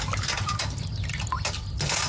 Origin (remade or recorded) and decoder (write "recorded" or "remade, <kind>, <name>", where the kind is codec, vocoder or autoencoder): recorded